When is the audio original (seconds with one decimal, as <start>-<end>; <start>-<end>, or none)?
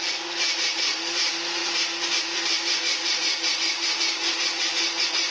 1.6-2.2